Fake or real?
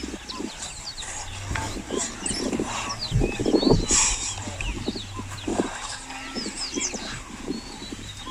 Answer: real